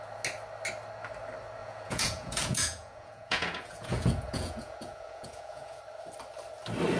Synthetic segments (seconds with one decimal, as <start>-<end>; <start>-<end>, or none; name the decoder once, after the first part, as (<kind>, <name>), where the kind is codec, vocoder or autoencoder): 1.6-5.8 (vocoder, Vocos)